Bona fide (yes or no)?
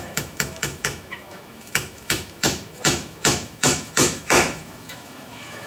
no